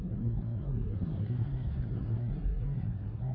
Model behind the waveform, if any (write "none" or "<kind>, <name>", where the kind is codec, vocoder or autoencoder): codec, SNAC